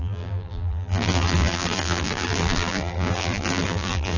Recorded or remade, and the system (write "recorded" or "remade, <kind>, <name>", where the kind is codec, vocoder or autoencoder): remade, vocoder, BigVGAN v2